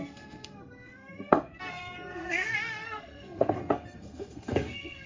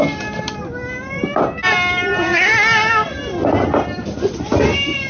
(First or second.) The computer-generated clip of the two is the first